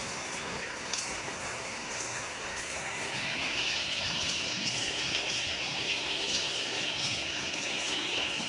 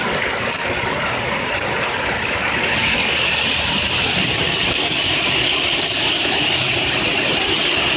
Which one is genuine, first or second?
second